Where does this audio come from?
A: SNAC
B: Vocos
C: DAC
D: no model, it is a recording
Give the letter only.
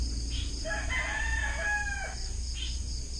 D